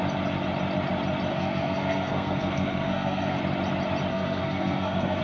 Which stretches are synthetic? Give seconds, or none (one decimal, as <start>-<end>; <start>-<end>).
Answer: 1.3-3.4; 4.1-5.2

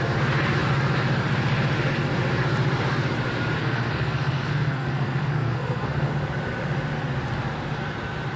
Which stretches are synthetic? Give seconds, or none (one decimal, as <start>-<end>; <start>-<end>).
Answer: 3.6-6.1

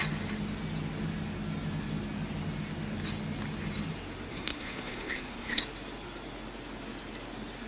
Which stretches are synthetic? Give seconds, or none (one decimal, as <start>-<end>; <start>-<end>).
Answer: 4.3-5.6